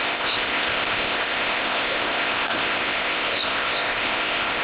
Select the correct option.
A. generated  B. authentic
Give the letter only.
A